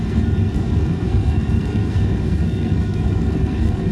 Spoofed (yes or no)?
yes